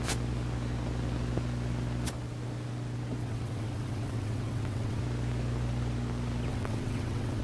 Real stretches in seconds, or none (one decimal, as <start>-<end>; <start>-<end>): 0.0-3.2; 5.0-6.5